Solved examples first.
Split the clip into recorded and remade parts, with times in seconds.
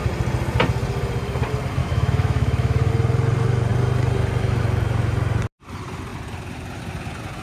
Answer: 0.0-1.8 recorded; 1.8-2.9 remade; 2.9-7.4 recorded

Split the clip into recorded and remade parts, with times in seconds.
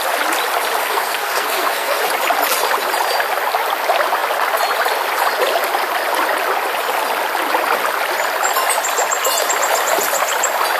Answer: 0.0-0.8 recorded; 0.8-2.0 remade; 2.0-10.8 recorded